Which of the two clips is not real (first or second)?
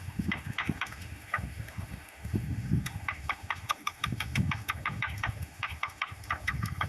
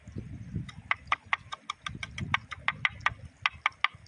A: first